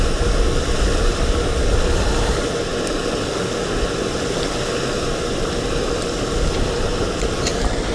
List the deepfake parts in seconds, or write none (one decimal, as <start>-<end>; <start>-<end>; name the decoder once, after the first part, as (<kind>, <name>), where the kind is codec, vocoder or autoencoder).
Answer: 6.9-7.9 (vocoder, BigVGAN v2)